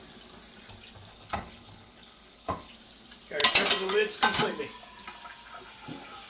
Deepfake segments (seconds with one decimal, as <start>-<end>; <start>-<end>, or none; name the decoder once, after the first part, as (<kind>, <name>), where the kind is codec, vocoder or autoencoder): 1.1-2.7 (codec, HILCodec)